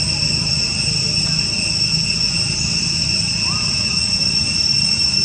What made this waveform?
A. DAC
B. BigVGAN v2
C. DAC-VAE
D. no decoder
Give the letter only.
D